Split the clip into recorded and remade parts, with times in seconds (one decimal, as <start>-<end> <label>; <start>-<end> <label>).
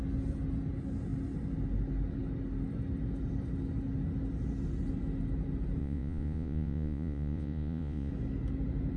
0.0-5.8 recorded; 5.8-8.1 remade; 8.1-9.0 recorded